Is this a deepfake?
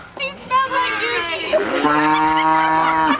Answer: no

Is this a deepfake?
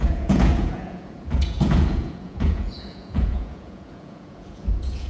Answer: yes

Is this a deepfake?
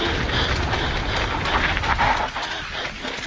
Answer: no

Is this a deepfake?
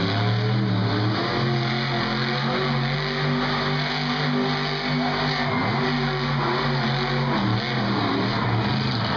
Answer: no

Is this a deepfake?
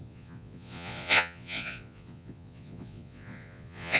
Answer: yes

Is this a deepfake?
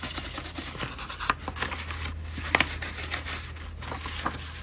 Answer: no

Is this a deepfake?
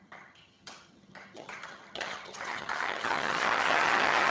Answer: yes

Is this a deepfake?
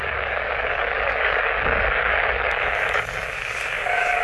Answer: yes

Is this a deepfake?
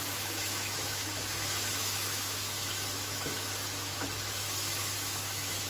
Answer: yes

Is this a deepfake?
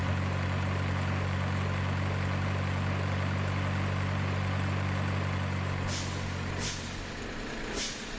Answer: no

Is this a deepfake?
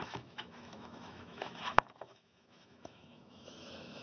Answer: yes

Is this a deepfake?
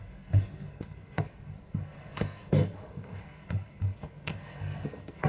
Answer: yes